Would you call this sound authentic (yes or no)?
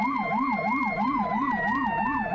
no